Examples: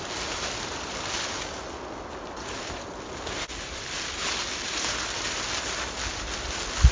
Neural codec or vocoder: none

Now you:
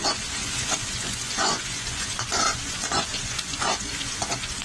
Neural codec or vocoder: vocoder, Vocos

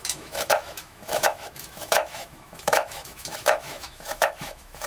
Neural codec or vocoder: autoencoder, DAC-VAE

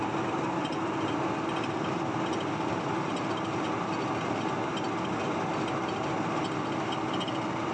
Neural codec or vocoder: none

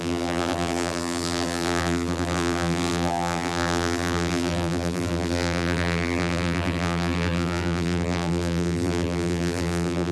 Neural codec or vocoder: vocoder, BigVGAN v2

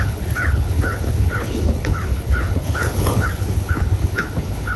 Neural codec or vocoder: codec, HILCodec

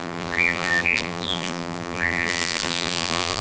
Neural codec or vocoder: vocoder, BigVGAN v2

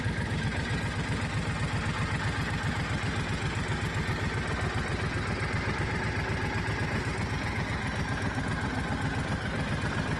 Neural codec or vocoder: none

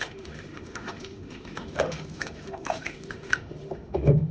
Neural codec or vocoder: autoencoder, DAC-VAE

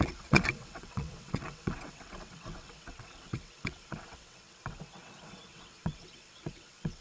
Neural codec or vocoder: vocoder, WaveNeXt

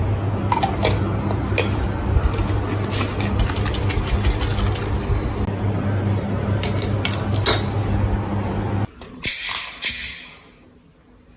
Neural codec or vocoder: none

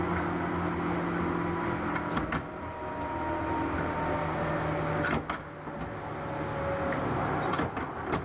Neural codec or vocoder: none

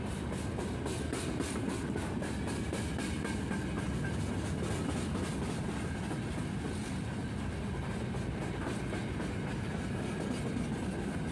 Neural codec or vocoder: none